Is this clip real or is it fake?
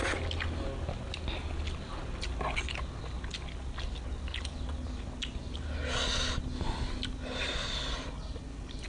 real